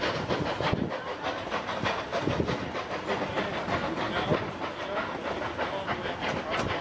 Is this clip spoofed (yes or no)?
no